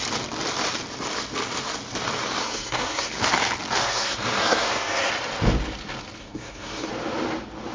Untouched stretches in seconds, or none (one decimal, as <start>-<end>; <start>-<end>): 0.0-2.4; 3.1-3.8; 5.1-6.2; 6.9-7.7